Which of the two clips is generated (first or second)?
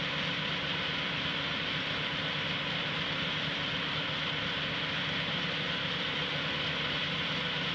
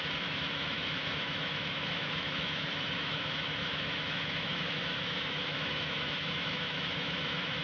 second